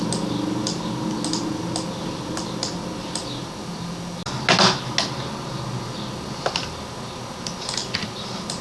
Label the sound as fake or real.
real